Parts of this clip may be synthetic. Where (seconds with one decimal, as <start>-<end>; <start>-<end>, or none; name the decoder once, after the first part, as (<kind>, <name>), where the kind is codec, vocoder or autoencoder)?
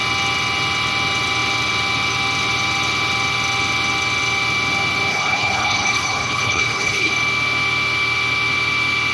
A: 5.1-7.1 (codec, HILCodec)